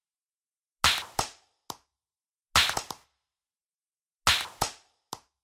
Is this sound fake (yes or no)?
no